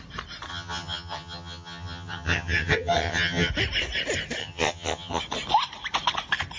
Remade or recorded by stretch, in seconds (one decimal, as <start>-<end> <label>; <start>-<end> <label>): 0.0-0.5 recorded; 0.5-3.5 remade; 3.5-4.4 recorded; 4.4-5.2 remade; 5.2-6.6 recorded